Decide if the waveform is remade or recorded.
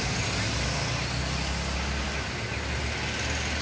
recorded